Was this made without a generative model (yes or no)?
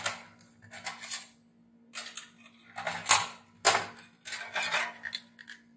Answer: yes